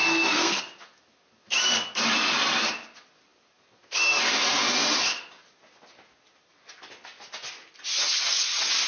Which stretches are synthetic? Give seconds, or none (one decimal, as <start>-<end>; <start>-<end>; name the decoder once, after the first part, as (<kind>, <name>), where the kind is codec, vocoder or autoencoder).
0.0-0.6 (codec, SNAC)